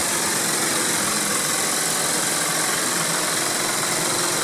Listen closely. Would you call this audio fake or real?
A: real